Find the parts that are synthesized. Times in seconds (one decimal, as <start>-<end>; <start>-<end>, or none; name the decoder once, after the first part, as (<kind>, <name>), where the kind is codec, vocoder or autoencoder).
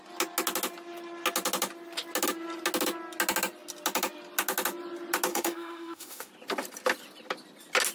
5.3-6.3 (autoencoder, DAC-VAE)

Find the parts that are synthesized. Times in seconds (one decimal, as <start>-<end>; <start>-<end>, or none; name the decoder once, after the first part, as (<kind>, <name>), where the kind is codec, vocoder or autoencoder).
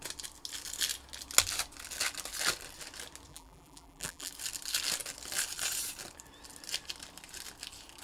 3.3-4.3 (vocoder, BigVGAN v2)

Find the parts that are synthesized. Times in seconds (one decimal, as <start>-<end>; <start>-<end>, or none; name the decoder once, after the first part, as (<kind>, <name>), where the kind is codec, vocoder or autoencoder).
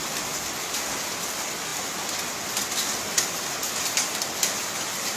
0.0-0.8 (vocoder, BigVGAN v2); 3.6-4.6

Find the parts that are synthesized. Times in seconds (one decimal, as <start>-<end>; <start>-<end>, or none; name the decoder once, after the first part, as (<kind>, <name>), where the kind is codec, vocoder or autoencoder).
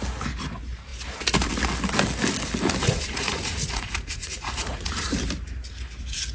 2.8-5.1 (vocoder, Vocos)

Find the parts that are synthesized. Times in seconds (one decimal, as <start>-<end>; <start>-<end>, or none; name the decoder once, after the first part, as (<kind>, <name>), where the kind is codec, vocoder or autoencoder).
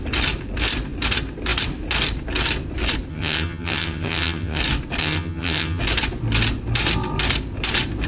3.1-4.6 (vocoder, HiFi-GAN); 5.0-5.8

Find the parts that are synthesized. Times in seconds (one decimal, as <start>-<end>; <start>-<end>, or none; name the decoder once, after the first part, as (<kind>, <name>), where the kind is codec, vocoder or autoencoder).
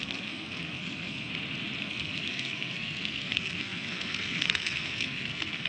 0.0-1.3 (codec, SNAC); 1.8-5.7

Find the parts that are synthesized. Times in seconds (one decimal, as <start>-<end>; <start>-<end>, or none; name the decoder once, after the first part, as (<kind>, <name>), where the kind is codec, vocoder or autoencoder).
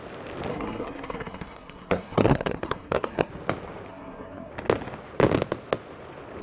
0.5-3.3 (codec, SNAC); 3.9-4.5